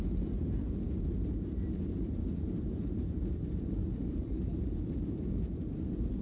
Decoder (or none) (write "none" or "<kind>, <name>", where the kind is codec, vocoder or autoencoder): vocoder, BigVGAN v2